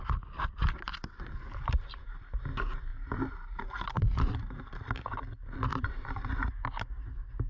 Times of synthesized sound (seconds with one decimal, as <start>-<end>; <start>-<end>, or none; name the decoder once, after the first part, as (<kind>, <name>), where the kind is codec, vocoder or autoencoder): 0.6-2.2 (vocoder, BigVGAN v2); 2.9-4.8; 5.7-6.3